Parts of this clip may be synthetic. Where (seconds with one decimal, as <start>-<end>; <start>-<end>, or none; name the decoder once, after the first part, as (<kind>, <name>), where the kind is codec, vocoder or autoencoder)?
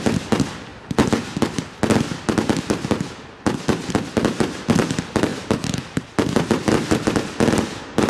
5.3-6.0 (vocoder, BigVGAN v2)